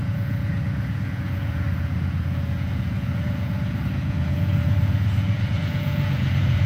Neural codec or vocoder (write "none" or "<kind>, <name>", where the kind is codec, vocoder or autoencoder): vocoder, Vocos